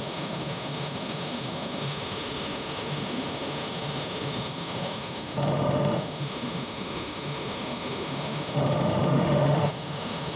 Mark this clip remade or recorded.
remade